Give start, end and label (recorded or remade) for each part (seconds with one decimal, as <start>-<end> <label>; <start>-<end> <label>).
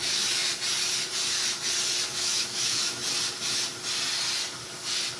0.0-0.4 remade; 0.4-2.1 recorded; 2.1-3.0 remade; 3.0-5.2 recorded